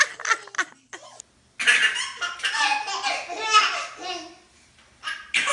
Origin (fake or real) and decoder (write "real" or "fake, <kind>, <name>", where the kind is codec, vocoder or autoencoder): real